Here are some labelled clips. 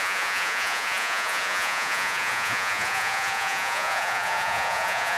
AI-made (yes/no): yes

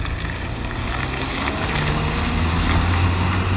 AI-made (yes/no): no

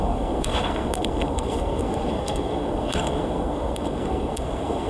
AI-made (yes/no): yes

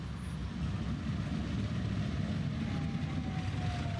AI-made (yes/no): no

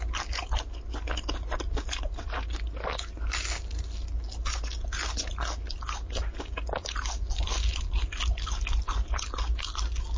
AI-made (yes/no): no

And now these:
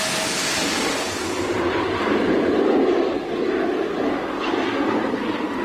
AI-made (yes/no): no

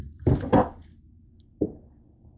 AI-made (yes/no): no